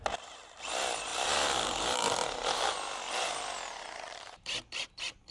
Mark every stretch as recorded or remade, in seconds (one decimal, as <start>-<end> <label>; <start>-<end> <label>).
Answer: 0.0-5.3 recorded